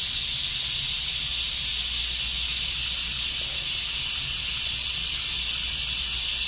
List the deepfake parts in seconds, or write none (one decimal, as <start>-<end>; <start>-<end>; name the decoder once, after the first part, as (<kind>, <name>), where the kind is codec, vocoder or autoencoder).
none